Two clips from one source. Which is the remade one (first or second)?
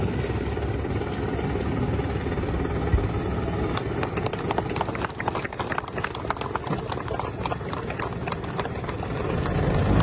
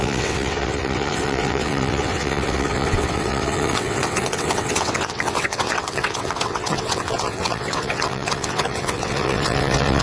second